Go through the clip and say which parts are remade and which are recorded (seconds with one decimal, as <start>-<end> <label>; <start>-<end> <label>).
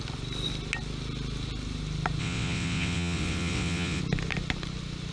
0.0-2.2 recorded; 2.2-4.0 remade; 4.0-5.1 recorded